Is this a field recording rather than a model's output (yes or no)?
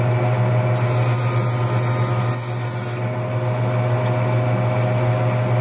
yes